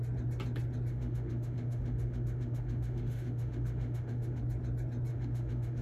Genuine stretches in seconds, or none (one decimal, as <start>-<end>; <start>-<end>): 0.0-0.9; 4.4-5.1